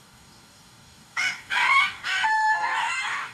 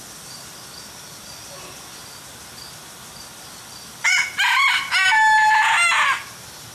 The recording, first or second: second